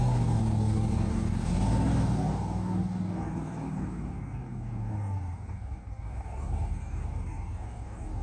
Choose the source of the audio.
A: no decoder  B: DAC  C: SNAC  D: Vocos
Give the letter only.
B